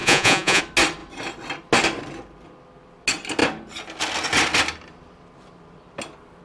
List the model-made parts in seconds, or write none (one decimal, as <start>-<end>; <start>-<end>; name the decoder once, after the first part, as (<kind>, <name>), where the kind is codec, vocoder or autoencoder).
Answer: 0.0-0.6 (vocoder, Vocos)